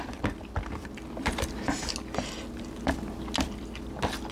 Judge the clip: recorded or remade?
recorded